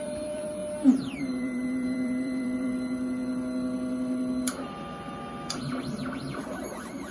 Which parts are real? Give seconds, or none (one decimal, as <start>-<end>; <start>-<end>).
0.6-1.2; 2.7-7.1

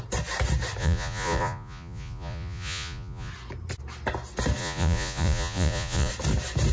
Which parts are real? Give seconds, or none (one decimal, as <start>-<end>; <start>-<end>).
0.0-0.8; 3.3-4.6; 6.1-6.7

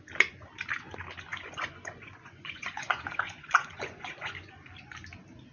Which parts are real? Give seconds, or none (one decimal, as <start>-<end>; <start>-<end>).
0.0-1.3; 4.6-5.5

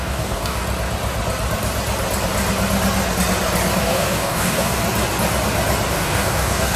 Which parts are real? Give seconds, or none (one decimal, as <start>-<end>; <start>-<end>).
0.6-3.8; 4.8-5.9

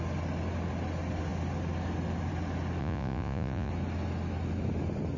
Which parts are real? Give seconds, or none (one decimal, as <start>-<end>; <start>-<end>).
0.0-2.8; 3.7-5.2

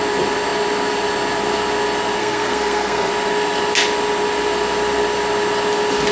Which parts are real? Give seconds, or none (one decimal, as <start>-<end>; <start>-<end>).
0.0-2.2; 3.1-6.1

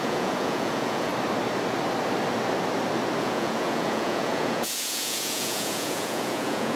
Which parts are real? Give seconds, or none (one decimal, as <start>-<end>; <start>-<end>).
1.1-3.2

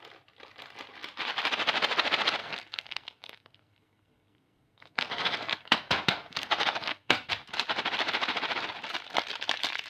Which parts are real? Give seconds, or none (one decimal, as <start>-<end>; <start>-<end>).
0.0-2.4; 7.3-9.9